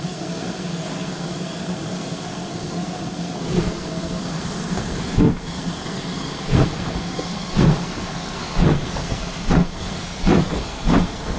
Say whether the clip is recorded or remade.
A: remade